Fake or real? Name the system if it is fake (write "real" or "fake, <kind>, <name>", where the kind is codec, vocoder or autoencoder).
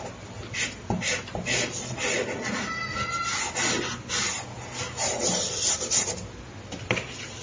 real